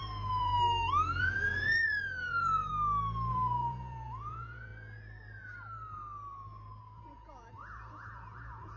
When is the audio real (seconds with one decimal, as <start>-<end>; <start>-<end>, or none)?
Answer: 0.5-1.2; 2.7-3.3; 4.7-6.8